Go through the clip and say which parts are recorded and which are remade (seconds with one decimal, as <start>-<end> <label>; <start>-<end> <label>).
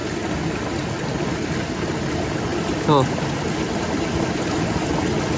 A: 0.0-5.4 recorded